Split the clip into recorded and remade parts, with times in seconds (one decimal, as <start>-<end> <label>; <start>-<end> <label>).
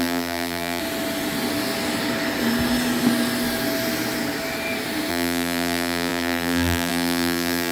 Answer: 0.0-0.8 remade; 0.8-5.1 recorded; 5.1-7.7 remade